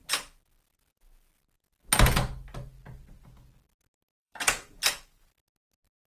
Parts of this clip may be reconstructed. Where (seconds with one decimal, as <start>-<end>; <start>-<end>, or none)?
4.1-5.3

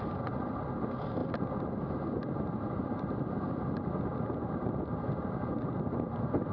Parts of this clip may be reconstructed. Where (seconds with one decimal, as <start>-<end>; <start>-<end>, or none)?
none